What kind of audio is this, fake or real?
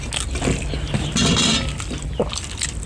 real